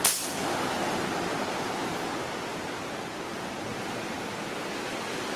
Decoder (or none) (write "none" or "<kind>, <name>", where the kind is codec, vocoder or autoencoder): none